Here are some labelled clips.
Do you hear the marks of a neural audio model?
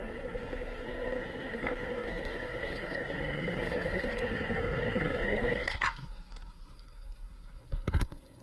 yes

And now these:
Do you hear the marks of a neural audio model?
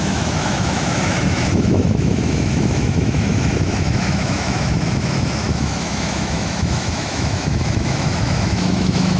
yes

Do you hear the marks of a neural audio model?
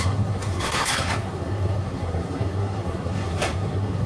yes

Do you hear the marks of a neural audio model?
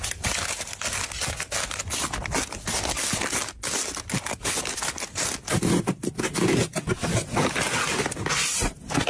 no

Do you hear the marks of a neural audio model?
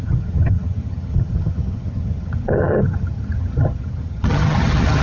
yes